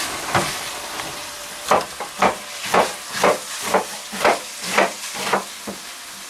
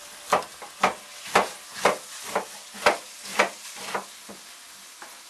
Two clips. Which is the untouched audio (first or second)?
second